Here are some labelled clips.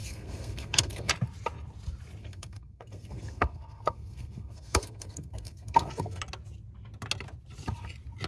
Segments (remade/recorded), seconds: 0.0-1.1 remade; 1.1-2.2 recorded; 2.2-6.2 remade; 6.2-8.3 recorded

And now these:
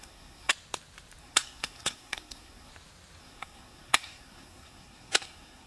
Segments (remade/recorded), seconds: 0.0-0.5 remade; 0.5-1.2 recorded; 1.2-2.7 remade; 2.7-3.2 recorded; 3.2-5.7 remade

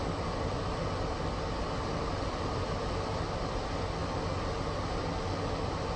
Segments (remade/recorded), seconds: 0.0-6.0 recorded

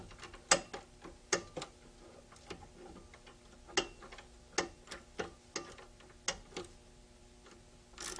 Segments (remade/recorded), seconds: 0.0-8.2 recorded

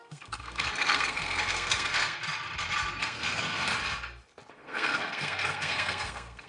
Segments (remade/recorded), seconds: 0.0-2.2 remade; 2.2-3.0 recorded; 3.0-3.7 remade; 3.7-4.5 recorded; 4.5-6.5 remade

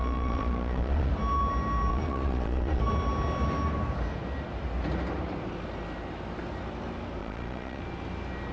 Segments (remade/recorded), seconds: 0.0-1.1 remade; 1.1-1.9 recorded; 1.9-2.8 remade; 2.8-7.2 recorded; 7.2-7.8 remade; 7.8-8.5 recorded